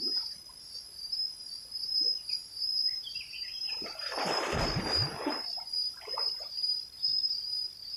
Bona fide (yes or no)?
no